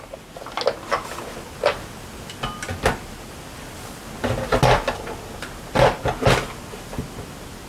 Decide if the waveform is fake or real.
real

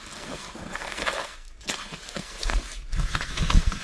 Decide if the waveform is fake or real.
fake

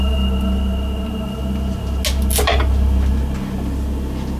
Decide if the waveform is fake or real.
real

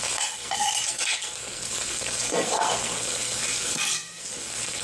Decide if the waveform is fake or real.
fake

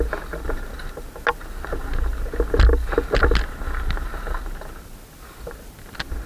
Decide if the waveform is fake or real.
real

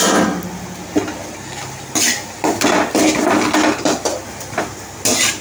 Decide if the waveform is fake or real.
real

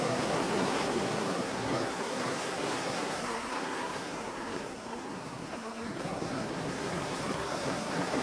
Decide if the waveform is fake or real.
fake